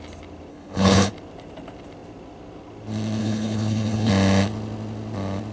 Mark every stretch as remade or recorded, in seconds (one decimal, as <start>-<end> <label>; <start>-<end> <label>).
0.0-0.5 recorded; 0.5-1.1 remade; 1.1-3.2 recorded; 3.2-4.1 remade; 4.1-5.5 recorded